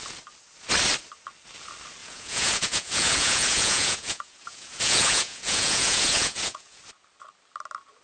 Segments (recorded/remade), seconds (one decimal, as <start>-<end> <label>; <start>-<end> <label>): 0.0-2.0 recorded; 2.0-6.8 remade; 6.8-8.0 recorded